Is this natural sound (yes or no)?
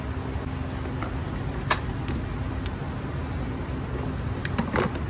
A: yes